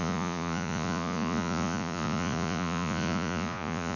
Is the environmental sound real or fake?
fake